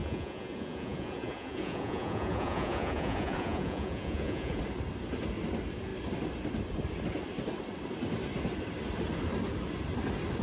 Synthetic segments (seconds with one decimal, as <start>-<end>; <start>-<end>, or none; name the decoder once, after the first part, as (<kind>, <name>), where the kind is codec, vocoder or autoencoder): 0.0-4.6 (vocoder, Vocos)